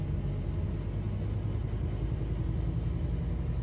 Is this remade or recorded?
recorded